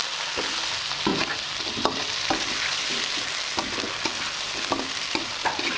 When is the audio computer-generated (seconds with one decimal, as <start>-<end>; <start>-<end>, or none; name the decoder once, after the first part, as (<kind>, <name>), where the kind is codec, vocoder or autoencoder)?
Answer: 1.1-3.1 (vocoder, BigVGAN v2); 4.1-5.8